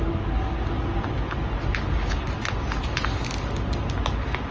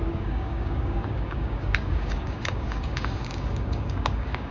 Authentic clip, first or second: first